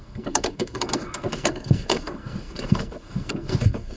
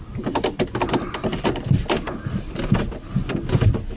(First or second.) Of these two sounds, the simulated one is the first